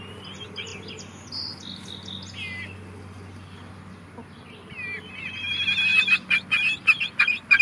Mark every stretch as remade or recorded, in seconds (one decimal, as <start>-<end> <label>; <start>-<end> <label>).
0.0-7.6 recorded